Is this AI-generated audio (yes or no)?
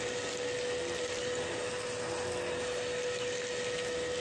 no